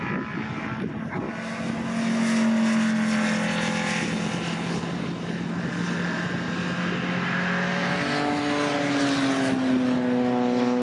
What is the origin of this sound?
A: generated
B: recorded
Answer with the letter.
B